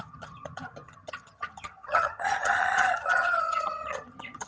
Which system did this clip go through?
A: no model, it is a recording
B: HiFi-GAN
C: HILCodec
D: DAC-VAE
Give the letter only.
B